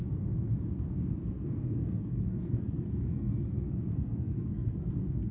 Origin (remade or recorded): remade